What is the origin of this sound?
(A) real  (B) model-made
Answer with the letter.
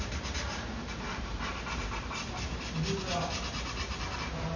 A